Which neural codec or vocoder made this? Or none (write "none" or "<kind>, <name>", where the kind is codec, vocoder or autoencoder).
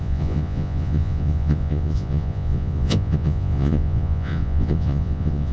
vocoder, Vocos